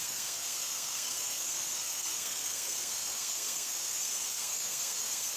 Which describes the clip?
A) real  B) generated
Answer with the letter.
B